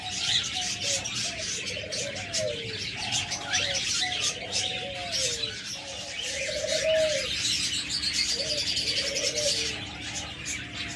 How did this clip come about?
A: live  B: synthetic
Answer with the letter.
A